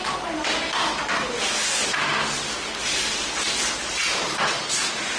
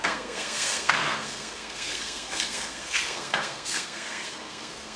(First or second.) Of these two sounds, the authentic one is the first